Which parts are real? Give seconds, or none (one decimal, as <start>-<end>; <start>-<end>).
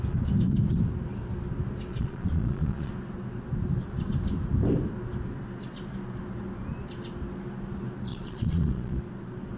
0.0-1.9; 2.9-8.1; 9.0-9.6